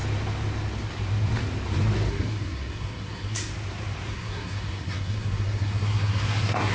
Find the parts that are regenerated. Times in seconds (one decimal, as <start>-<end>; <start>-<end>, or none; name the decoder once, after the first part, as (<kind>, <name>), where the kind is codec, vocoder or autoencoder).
2.1-3.5 (codec, SNAC); 4.1-6.7